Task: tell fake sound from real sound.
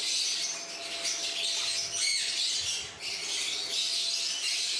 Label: real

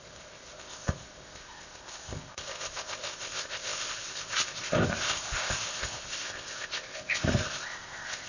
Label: fake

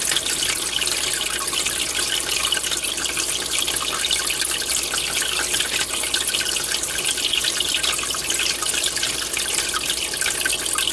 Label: real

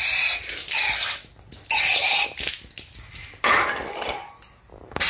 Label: real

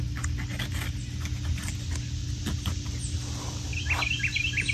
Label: real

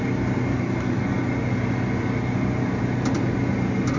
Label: real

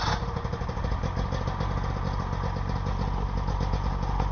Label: real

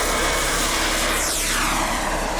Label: fake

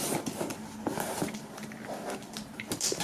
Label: real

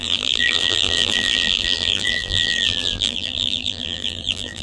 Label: fake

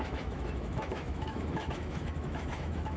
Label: fake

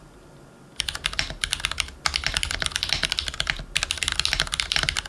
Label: real